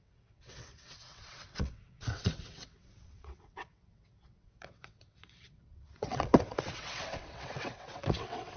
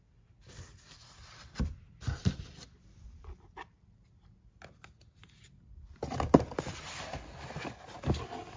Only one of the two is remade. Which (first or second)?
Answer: first